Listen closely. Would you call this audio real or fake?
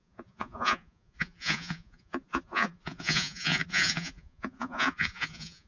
fake